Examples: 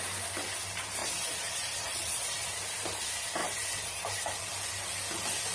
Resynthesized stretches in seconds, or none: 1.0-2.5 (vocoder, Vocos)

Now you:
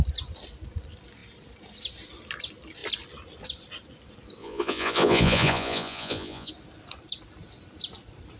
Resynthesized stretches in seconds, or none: 4.4-6.5 (vocoder, Vocos)